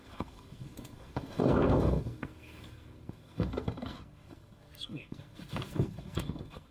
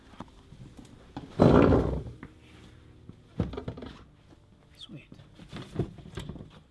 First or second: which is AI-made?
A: first